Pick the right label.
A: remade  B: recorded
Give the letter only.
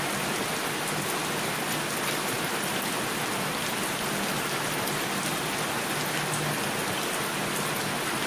B